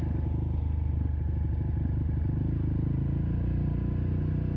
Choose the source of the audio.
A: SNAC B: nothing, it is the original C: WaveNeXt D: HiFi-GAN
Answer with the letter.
B